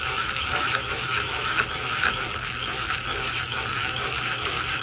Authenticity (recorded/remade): remade